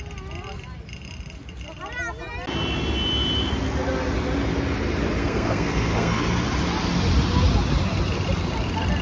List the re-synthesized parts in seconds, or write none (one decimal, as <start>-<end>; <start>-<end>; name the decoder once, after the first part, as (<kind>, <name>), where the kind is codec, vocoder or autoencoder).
5.2-6.2 (codec, SNAC)